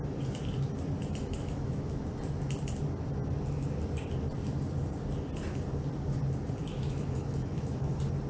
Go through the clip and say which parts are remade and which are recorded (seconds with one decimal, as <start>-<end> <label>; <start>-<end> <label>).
0.0-1.2 recorded; 1.2-2.0 remade; 2.0-6.6 recorded; 6.6-7.9 remade; 7.9-8.3 recorded